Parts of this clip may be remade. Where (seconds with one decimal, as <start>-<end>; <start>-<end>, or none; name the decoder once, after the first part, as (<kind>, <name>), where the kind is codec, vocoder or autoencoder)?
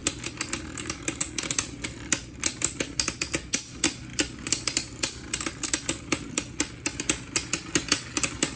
4.1-5.7 (vocoder, BigVGAN v2)